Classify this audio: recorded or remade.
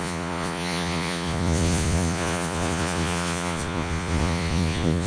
remade